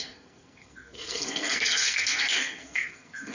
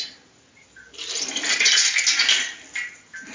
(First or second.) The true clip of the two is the second